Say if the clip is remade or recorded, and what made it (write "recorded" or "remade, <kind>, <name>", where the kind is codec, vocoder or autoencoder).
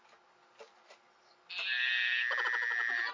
recorded